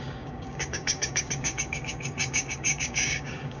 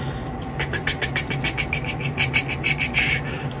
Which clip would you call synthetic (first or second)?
first